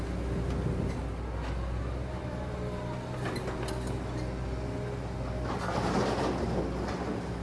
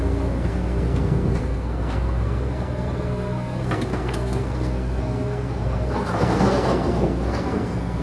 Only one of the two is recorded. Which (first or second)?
first